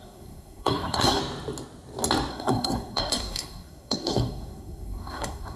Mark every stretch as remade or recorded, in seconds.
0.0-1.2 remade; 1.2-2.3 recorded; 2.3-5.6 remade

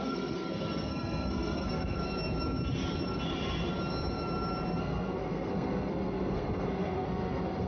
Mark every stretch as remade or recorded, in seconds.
0.0-2.0 remade; 2.0-4.8 recorded; 4.8-7.7 remade

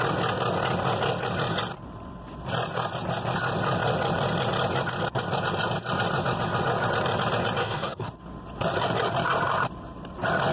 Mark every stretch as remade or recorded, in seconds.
0.0-7.6 recorded; 7.6-8.1 remade; 8.1-10.5 recorded

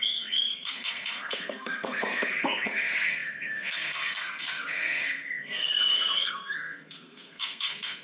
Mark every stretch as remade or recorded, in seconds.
0.0-8.0 remade

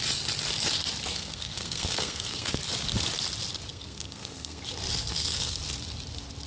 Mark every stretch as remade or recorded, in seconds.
0.0-1.1 recorded; 1.1-2.6 remade; 2.6-3.7 recorded; 3.7-4.6 remade; 4.6-5.1 recorded; 5.1-5.6 remade; 5.6-6.5 recorded

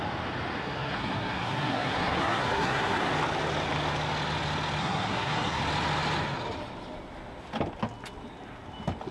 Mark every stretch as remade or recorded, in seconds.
0.0-0.6 recorded; 0.6-3.1 remade; 3.1-4.8 recorded; 4.8-5.6 remade; 5.6-9.1 recorded

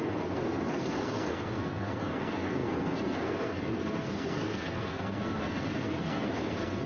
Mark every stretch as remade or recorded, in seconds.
0.0-6.9 remade